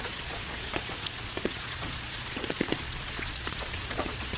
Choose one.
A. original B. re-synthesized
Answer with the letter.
B